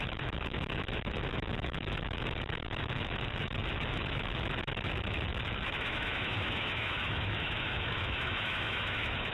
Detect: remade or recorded remade